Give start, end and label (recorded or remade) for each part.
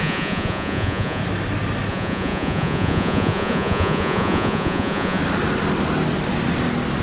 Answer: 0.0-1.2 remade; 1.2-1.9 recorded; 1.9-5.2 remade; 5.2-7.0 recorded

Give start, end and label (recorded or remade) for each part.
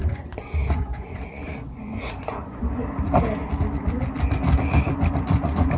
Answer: 0.0-2.6 remade; 2.6-5.1 recorded; 5.1-5.8 remade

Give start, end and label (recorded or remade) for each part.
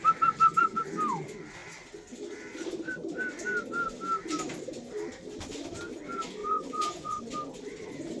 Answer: 0.0-6.4 recorded; 6.4-7.2 remade; 7.2-8.2 recorded